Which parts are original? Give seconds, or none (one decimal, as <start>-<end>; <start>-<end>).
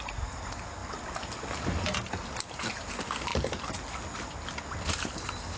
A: 0.0-5.6